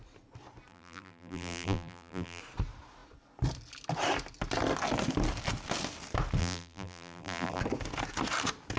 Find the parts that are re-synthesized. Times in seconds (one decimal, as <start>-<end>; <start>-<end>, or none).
0.7-2.4; 6.4-7.6